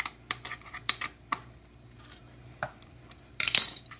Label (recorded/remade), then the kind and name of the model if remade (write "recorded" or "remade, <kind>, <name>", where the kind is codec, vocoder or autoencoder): remade, vocoder, BigVGAN v2